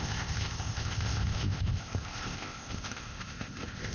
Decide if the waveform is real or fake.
fake